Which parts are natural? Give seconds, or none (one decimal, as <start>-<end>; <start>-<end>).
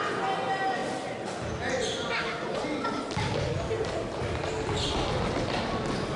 0.0-4.0; 4.9-6.2